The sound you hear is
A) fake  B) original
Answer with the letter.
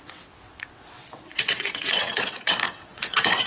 A